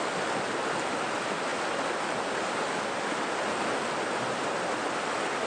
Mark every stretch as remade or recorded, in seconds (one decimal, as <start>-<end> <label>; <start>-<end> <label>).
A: 0.0-5.5 recorded